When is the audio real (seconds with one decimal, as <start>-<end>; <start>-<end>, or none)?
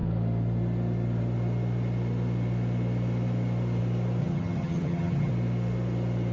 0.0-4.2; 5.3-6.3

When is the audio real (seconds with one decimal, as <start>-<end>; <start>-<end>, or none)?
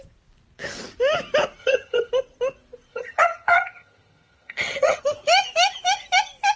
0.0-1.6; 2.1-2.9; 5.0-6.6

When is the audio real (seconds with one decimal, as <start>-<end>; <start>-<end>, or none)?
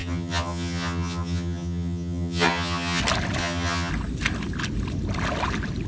3.0-3.4; 3.9-5.9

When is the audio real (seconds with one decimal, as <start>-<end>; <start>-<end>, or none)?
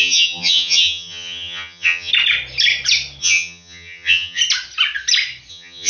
2.1-3.2; 4.4-5.5